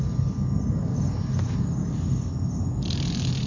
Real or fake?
real